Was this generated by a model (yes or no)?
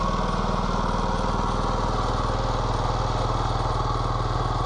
no